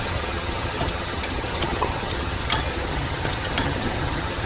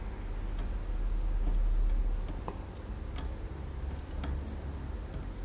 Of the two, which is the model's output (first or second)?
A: first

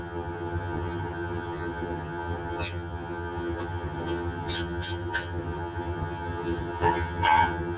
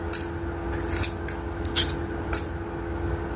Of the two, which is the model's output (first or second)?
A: first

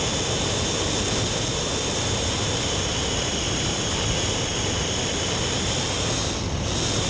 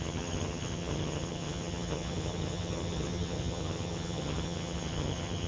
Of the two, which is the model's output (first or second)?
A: second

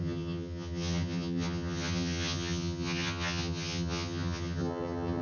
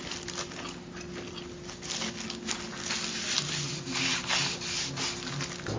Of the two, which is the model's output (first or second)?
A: first